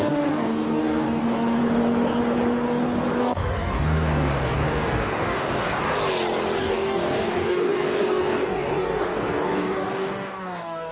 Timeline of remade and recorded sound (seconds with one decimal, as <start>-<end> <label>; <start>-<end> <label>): 0.0-1.6 remade; 1.6-3.2 recorded; 3.2-5.8 remade; 5.8-6.6 recorded; 6.6-10.9 remade